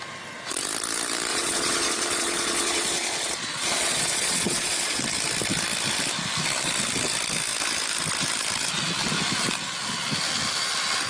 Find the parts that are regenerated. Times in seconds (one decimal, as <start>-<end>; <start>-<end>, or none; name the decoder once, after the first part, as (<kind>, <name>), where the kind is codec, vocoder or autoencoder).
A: 1.3-5.0 (vocoder, Vocos)